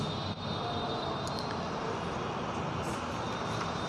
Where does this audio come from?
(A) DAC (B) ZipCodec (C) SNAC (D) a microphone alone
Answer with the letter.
D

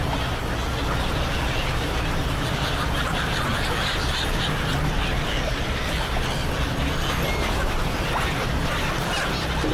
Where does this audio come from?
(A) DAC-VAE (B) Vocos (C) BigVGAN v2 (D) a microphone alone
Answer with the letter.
D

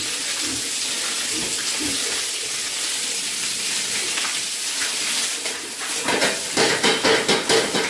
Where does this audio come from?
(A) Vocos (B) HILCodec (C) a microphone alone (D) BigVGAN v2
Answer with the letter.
C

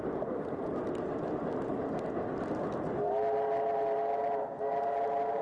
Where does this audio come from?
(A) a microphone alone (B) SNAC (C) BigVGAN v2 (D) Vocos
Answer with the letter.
A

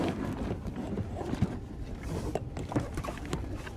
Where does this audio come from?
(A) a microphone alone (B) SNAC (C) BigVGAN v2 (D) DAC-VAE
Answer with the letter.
A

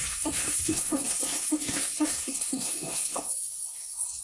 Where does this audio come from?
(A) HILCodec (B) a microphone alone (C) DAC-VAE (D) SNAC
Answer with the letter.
D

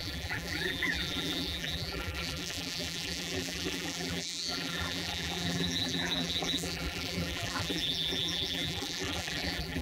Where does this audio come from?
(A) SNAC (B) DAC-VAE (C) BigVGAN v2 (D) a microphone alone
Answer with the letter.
C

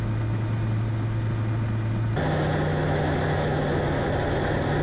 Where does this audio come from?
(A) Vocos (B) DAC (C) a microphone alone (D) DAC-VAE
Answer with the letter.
C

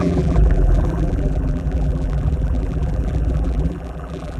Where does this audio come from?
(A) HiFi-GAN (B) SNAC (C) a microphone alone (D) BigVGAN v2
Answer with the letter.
D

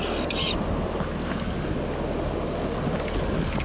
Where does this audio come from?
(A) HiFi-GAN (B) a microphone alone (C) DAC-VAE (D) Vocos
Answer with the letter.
B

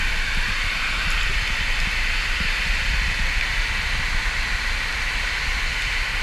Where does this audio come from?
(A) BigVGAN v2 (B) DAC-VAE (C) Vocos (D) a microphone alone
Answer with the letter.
D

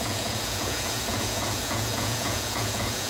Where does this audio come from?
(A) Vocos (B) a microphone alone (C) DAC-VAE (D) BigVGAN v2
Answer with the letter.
A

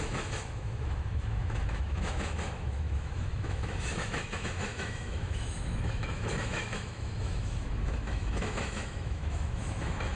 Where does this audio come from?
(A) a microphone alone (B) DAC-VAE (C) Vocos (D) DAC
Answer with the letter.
B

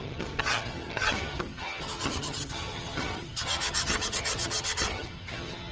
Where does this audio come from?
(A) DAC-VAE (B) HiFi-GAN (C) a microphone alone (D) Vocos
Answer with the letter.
B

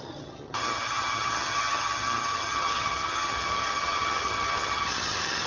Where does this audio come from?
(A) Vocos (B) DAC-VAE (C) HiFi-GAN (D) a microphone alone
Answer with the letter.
C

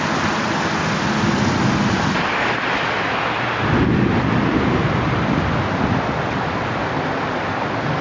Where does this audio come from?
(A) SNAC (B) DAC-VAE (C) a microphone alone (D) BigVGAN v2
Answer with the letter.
C